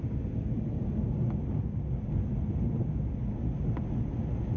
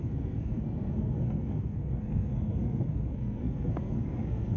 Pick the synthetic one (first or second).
second